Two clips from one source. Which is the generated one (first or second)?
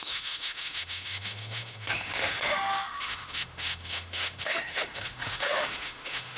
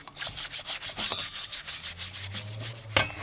first